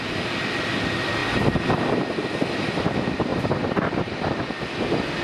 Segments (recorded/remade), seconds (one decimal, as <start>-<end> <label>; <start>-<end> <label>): 0.0-1.2 recorded; 1.2-2.3 remade; 2.3-3.3 recorded; 3.3-3.9 remade; 3.9-5.2 recorded